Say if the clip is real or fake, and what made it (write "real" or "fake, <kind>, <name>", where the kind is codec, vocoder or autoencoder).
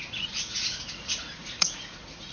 fake, vocoder, Vocos